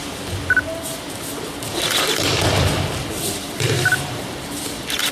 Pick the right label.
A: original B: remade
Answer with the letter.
A